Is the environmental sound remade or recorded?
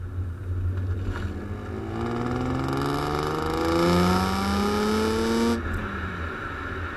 recorded